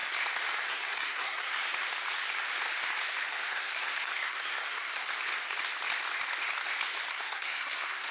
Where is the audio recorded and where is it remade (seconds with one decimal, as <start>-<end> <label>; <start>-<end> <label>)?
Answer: 0.0-0.7 recorded; 0.7-1.6 remade; 1.6-3.3 recorded; 3.3-5.1 remade; 5.1-7.1 recorded; 7.1-8.1 remade